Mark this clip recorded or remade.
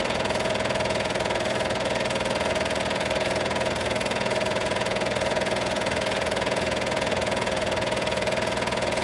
remade